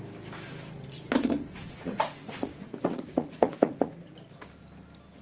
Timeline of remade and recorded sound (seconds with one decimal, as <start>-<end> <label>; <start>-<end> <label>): 0.0-1.2 recorded; 1.2-4.1 remade; 4.1-5.2 recorded